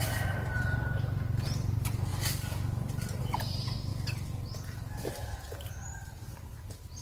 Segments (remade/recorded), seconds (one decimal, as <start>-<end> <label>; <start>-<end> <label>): 0.0-2.1 remade; 2.1-3.2 recorded; 3.2-3.9 remade; 3.9-5.1 recorded; 5.1-7.0 remade